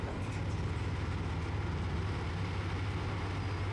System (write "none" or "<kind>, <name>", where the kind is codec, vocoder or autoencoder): none